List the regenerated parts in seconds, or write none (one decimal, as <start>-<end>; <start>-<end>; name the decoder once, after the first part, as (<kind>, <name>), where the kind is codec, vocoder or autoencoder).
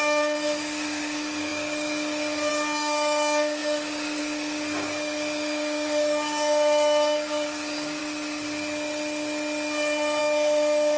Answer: 0.0-8.0 (codec, DAC); 10.2-11.0